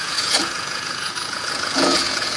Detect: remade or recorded remade